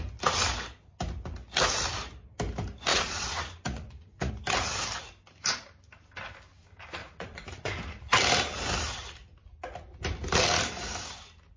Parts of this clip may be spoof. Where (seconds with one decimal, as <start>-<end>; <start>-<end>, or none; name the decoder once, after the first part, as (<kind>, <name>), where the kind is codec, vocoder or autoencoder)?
2.9-4.3 (vocoder, Vocos); 7.0-7.7